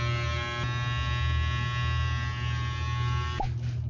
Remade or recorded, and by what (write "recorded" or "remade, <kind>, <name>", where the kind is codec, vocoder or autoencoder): recorded